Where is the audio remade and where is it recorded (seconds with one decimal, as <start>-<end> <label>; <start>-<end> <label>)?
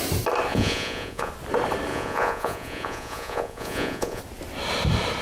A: 0.0-0.5 recorded; 0.5-1.3 remade; 1.3-1.9 recorded; 1.9-4.2 remade; 4.2-5.2 recorded